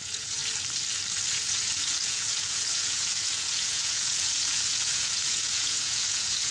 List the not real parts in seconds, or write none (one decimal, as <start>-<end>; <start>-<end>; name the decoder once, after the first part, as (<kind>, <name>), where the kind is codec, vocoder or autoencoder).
0.0-0.4 (vocoder, Vocos); 1.3-6.5